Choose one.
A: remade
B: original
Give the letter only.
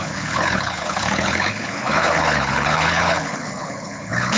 A